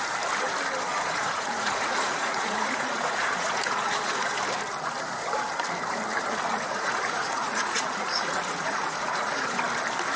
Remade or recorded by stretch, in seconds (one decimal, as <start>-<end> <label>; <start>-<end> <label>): 0.0-0.9 recorded; 0.9-4.3 remade; 4.3-6.5 recorded; 6.5-9.6 remade; 9.6-10.2 recorded